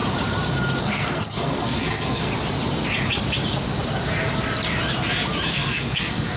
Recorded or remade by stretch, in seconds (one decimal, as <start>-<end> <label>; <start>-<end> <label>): 0.0-0.8 recorded; 0.8-2.3 remade; 2.3-5.5 recorded; 5.5-6.4 remade